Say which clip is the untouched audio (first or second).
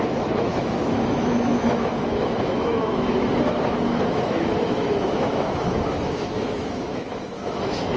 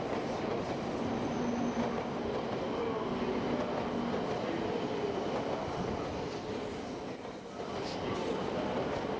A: second